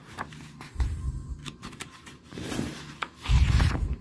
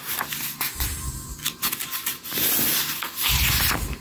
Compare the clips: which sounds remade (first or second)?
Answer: first